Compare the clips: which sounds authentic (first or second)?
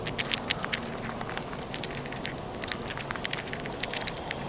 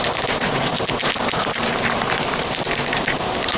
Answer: first